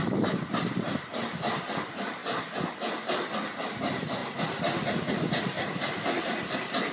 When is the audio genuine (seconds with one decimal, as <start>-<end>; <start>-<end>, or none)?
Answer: 2.2-3.7; 4.2-5.0